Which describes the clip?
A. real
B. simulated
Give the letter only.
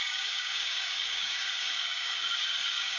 B